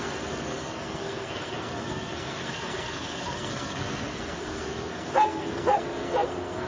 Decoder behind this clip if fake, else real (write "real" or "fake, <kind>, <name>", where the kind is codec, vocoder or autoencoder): fake, codec, SNAC